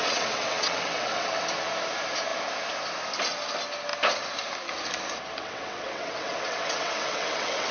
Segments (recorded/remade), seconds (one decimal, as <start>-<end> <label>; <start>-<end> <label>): 0.0-1.4 remade; 1.4-5.4 recorded; 5.4-7.7 remade